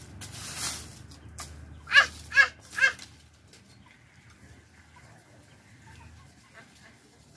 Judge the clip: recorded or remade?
recorded